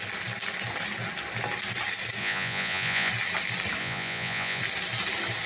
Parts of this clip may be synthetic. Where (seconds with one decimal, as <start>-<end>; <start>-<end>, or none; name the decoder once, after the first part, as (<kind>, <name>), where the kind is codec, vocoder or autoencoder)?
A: 2.2-3.1 (vocoder, Vocos); 3.8-4.6